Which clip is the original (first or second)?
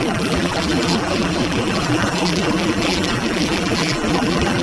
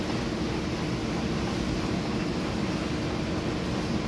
second